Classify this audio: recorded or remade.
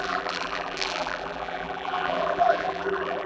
remade